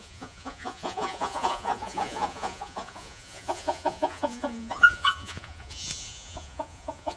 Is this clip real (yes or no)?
no